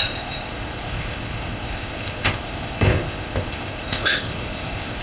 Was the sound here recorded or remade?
remade